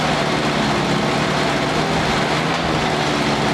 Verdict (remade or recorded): recorded